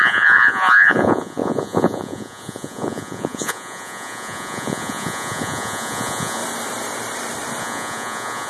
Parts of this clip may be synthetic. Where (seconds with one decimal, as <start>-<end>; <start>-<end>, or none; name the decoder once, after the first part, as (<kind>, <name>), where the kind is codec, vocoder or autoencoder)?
0.0-6.4 (vocoder, Vocos); 7.6-8.5